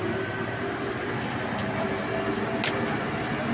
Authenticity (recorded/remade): recorded